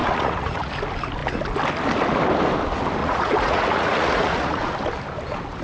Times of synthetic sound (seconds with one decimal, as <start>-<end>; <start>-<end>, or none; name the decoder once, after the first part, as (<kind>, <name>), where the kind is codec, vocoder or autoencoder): 0.0-0.7 (vocoder, Vocos); 3.0-4.7